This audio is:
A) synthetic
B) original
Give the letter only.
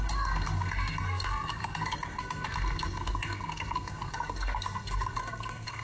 A